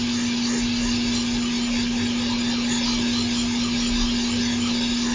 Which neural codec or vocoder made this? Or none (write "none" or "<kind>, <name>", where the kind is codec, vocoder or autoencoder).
none